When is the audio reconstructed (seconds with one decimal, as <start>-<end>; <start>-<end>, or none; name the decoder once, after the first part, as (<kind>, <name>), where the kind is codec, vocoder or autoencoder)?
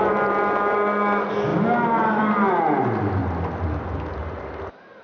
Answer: none